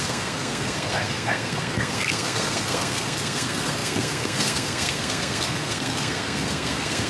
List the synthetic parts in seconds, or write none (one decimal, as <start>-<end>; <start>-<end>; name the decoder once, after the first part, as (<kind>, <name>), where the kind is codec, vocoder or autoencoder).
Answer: 0.0-7.1 (codec, SNAC)